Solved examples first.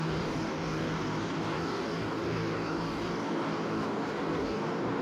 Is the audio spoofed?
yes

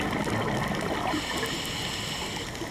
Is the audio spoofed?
no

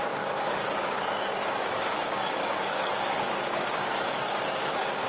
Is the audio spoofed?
yes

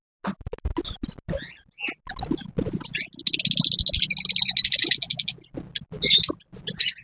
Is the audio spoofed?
no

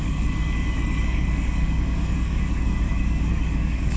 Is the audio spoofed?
yes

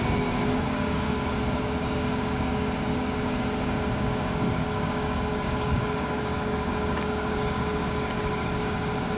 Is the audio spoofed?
yes